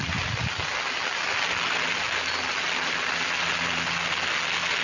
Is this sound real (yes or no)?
yes